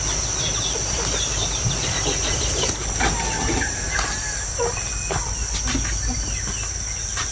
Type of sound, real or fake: real